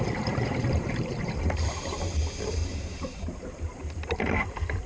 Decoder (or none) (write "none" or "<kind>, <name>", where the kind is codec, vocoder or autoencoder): vocoder, BigVGAN v2